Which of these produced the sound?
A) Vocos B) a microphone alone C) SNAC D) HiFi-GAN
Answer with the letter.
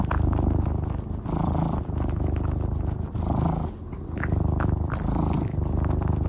B